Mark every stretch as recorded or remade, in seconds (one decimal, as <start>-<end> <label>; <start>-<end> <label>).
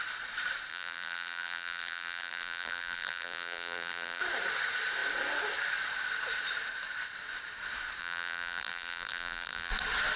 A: 0.0-0.7 recorded; 0.7-4.2 remade; 4.2-8.0 recorded; 8.0-9.7 remade; 9.7-10.2 recorded